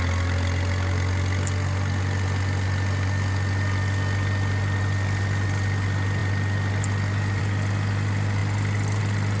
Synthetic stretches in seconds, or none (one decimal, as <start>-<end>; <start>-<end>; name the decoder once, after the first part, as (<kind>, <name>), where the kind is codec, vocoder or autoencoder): none